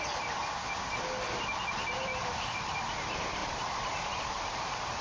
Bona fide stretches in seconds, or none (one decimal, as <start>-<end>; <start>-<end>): 0.4-1.7